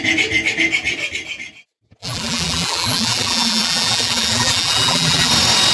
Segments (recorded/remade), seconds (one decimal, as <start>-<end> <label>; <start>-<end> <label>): 0.0-2.0 recorded; 2.0-5.3 remade; 5.3-5.7 recorded